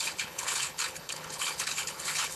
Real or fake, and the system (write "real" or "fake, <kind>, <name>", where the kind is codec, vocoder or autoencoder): fake, codec, HILCodec